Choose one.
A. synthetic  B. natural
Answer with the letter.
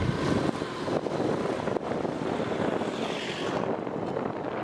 B